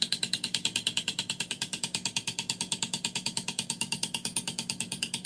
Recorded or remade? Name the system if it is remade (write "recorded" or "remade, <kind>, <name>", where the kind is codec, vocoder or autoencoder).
remade, codec, DAC